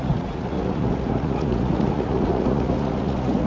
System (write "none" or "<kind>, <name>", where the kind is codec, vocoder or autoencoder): vocoder, Vocos